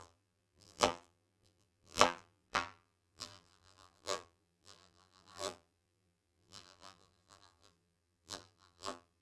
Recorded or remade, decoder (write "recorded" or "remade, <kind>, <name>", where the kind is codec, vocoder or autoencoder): remade, vocoder, BigVGAN v2